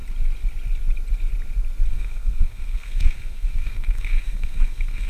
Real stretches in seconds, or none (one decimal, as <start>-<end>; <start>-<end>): 0.0-1.9